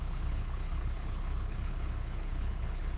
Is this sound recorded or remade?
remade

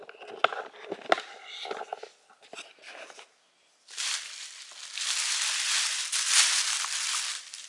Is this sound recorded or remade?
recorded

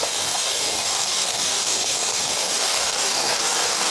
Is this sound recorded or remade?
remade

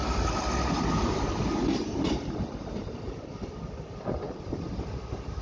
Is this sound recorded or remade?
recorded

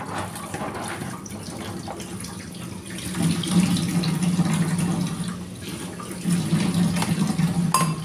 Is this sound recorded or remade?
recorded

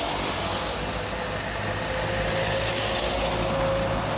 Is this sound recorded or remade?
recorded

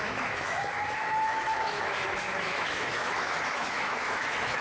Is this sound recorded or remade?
remade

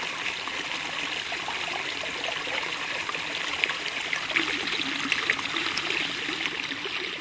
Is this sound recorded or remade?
recorded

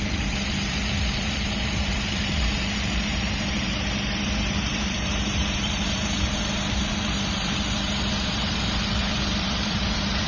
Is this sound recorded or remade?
remade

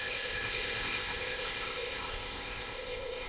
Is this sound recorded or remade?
remade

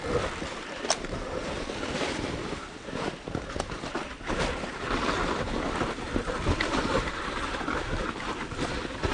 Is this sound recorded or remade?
remade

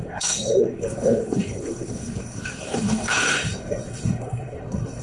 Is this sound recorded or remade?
remade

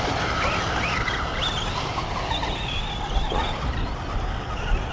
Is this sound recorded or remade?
recorded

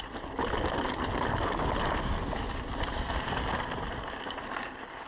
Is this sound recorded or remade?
recorded